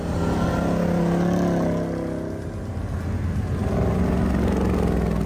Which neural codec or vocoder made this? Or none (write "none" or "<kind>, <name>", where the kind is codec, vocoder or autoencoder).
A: none